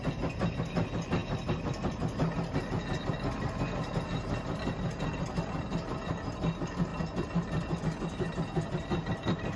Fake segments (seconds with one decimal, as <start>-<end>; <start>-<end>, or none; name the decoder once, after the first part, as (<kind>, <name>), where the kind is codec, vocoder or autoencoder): none